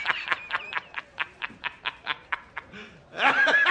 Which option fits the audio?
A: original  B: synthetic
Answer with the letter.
B